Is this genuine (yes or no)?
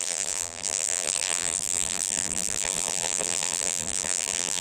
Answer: no